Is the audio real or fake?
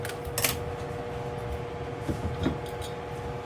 real